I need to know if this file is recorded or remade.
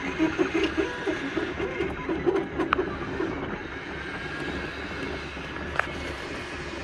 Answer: recorded